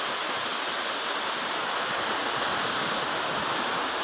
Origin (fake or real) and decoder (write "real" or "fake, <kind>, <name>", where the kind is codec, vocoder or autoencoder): real